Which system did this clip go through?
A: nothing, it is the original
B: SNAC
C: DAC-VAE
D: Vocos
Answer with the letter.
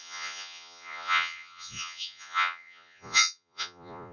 D